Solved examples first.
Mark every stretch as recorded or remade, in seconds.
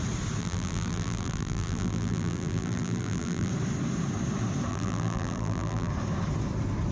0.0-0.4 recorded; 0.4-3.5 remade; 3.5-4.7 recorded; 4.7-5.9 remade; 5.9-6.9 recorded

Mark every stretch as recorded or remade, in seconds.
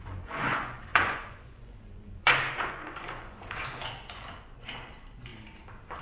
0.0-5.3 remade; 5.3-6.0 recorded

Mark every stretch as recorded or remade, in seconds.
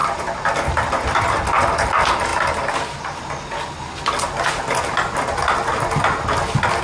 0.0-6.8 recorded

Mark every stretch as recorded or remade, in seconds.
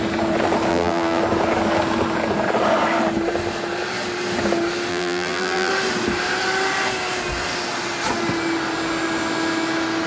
0.0-0.7 recorded; 0.7-1.2 remade; 1.2-4.9 recorded; 4.9-5.7 remade; 5.7-10.1 recorded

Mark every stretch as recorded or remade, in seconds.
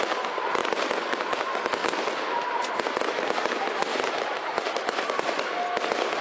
0.0-0.6 recorded; 0.6-1.3 remade; 1.3-3.9 recorded; 3.9-4.7 remade; 4.7-6.2 recorded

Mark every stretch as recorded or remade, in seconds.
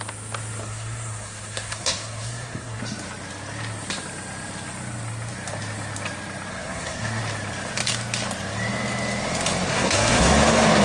0.0-0.6 recorded; 0.6-2.8 remade; 2.8-6.5 recorded; 6.5-7.2 remade; 7.2-9.7 recorded; 9.7-10.3 remade; 10.3-10.8 recorded